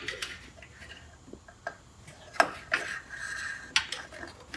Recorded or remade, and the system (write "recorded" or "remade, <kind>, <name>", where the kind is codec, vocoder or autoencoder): recorded